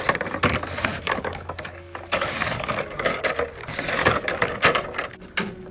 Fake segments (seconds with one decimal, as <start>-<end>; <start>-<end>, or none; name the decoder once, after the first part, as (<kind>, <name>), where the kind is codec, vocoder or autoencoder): 0.9-3.2 (codec, DAC); 4.0-4.5

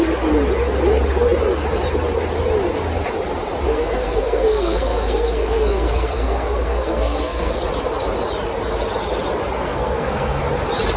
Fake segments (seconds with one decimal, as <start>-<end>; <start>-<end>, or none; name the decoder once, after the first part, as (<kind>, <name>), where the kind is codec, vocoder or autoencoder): 3.7-7.6 (codec, SNAC); 9.6-10.4

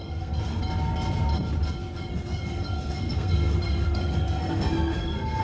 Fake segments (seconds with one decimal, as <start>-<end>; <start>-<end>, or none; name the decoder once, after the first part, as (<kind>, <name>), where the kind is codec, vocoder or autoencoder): 0.0-0.6 (codec, SNAC); 2.1-5.4